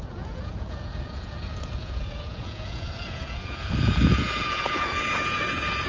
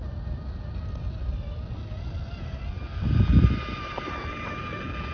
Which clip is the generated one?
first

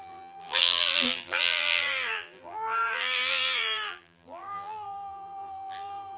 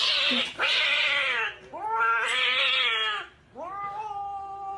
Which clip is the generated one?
first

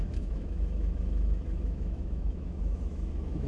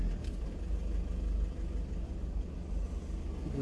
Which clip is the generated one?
first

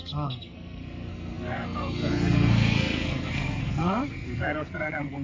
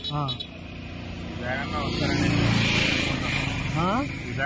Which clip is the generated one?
first